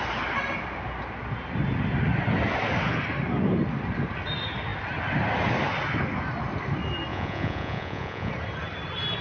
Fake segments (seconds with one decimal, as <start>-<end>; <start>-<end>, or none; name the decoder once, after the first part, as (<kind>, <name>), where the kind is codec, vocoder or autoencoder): 7.1-8.3 (vocoder, Vocos)